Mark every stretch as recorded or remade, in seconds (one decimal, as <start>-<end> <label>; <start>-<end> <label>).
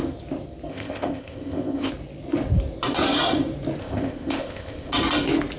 0.0-0.7 recorded; 0.7-1.9 remade; 1.9-3.8 recorded; 3.8-4.9 remade; 4.9-5.6 recorded